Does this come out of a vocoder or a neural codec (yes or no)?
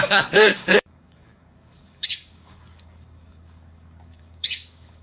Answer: yes